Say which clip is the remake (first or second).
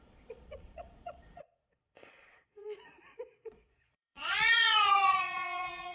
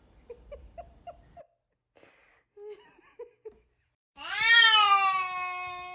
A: first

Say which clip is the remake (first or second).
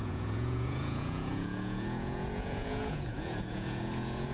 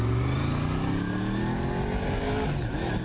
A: first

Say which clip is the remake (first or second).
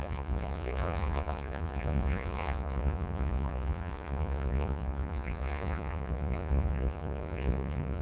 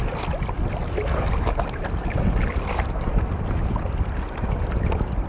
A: first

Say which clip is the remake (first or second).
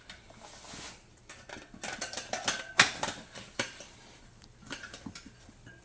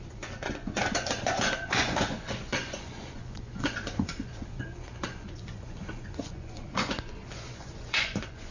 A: second